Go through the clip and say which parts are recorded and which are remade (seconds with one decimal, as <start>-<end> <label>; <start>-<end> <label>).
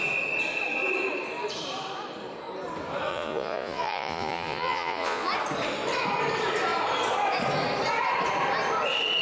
0.0-3.1 recorded; 3.1-5.3 remade; 5.3-9.2 recorded